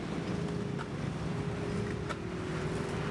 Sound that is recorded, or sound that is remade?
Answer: recorded